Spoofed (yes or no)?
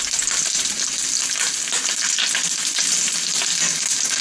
no